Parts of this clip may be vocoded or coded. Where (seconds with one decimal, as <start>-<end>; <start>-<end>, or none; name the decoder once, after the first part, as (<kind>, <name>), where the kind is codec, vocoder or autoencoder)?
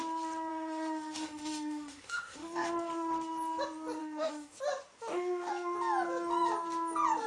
0.5-2.7 (autoencoder, DAC-VAE); 4.0-4.6; 5.0-5.5